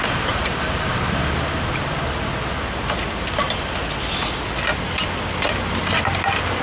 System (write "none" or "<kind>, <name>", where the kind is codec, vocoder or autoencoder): none